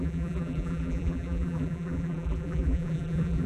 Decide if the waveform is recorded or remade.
remade